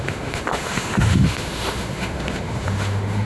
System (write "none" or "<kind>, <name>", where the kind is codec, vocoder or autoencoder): autoencoder, DAC-VAE